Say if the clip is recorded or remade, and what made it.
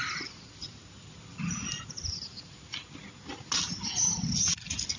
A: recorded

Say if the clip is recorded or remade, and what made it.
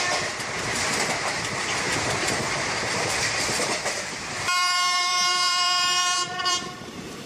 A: remade, vocoder, BigVGAN v2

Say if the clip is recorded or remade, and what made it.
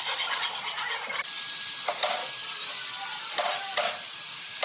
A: recorded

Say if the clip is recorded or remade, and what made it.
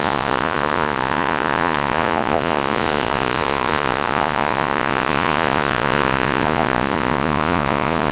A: remade, vocoder, Vocos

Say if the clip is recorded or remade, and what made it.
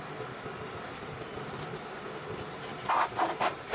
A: remade, vocoder, BigVGAN v2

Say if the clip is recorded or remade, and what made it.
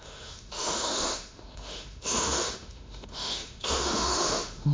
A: remade, autoencoder, DAC-VAE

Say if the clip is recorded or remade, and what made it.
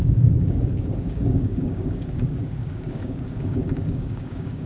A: remade, codec, DAC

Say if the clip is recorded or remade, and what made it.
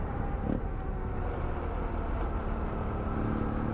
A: recorded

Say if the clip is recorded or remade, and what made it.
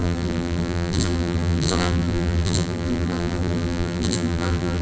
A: remade, vocoder, BigVGAN v2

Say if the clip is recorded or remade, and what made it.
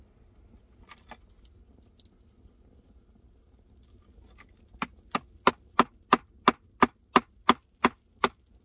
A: recorded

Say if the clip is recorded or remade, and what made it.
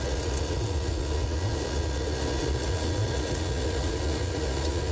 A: remade, vocoder, Vocos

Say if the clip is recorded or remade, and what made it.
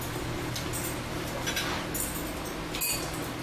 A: recorded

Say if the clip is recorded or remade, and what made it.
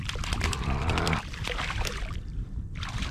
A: remade, vocoder, BigVGAN v2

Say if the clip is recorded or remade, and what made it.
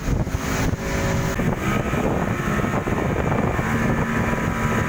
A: recorded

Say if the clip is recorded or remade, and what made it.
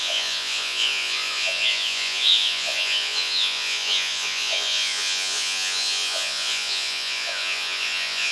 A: remade, vocoder, Vocos